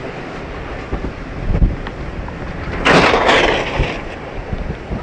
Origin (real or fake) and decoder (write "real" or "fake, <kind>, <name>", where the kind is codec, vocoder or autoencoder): real